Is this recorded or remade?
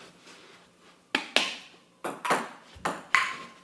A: recorded